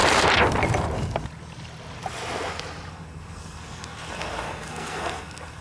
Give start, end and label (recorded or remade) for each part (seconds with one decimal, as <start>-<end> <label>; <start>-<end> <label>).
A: 0.0-2.9 recorded; 2.9-5.6 remade